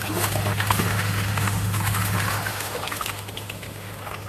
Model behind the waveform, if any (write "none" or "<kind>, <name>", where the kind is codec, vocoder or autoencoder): autoencoder, DAC-VAE